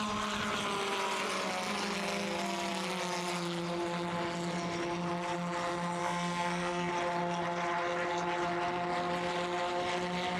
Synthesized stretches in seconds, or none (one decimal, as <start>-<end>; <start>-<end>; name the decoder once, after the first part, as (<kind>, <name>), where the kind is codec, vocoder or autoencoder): 6.0-6.9 (codec, SNAC)